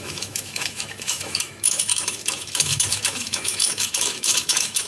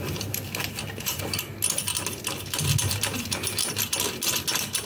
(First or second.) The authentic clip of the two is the second